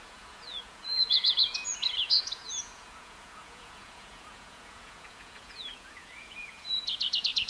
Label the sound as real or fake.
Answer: fake